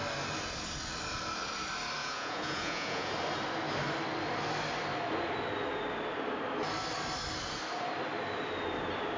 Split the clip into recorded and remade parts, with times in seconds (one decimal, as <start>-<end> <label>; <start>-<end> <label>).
0.0-2.0 recorded; 2.0-3.1 remade; 3.1-9.2 recorded